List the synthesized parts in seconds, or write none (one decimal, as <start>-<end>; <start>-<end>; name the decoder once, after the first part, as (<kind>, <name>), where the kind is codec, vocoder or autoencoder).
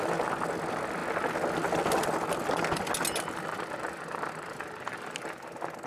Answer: none